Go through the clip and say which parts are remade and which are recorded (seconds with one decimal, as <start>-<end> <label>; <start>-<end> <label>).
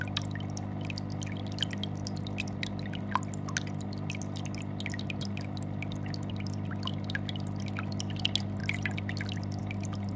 0.0-10.2 recorded